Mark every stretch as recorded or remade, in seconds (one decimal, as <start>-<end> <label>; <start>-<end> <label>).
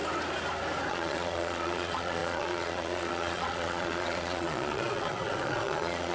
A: 0.0-0.9 recorded; 0.9-6.1 remade